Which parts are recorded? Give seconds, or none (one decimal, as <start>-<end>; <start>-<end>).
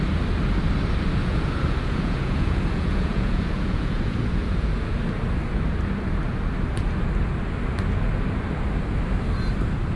0.0-1.2; 5.0-10.0